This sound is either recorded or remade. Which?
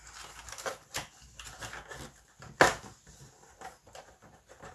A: recorded